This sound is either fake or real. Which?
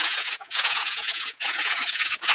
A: fake